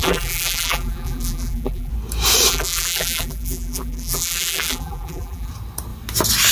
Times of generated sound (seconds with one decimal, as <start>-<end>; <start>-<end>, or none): 0.0-1.9; 2.5-5.5